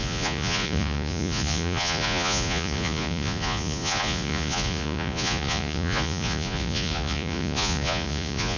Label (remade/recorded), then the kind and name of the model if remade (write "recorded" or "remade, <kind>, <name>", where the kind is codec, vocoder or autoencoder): remade, vocoder, Vocos